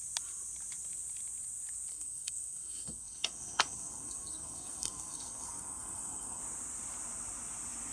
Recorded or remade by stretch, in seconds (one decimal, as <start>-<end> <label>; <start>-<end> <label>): 0.0-1.9 recorded; 1.9-6.4 remade; 6.4-7.9 recorded